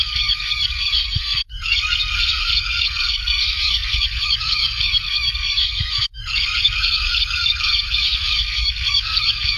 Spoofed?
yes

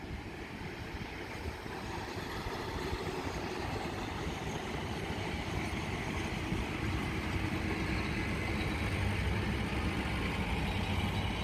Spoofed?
no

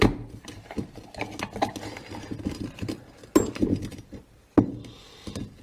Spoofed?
no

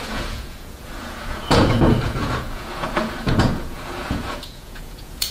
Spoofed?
yes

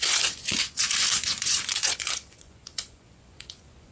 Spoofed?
yes